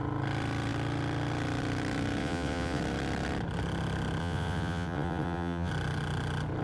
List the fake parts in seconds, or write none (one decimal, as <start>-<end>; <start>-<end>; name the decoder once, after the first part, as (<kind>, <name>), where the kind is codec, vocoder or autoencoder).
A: 2.2-2.8 (vocoder, WaveNeXt); 4.2-5.7